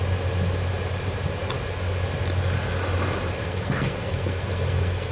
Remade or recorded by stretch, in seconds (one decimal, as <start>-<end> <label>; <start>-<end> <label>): 0.0-3.4 recorded; 3.4-5.1 remade

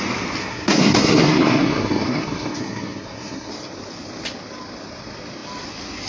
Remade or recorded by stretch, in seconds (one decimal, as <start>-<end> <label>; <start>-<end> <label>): 0.0-0.4 recorded; 0.4-3.5 remade; 3.5-6.1 recorded

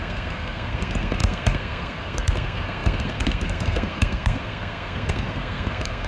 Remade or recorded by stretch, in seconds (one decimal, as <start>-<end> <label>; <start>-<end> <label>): 0.0-6.1 remade

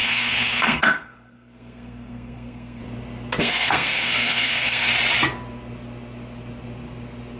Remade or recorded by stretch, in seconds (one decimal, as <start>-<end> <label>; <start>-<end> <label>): 0.0-2.8 remade; 2.8-3.4 recorded; 3.4-4.9 remade; 4.9-7.4 recorded

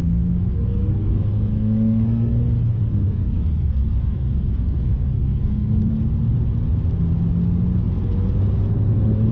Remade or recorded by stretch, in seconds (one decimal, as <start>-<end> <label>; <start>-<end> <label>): 0.0-2.3 remade; 2.3-2.8 recorded; 2.8-5.9 remade; 5.9-9.3 recorded

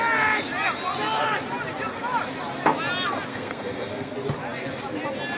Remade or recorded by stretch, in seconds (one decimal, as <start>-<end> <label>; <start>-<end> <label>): 0.0-3.3 recorded; 3.3-4.1 remade; 4.1-5.4 recorded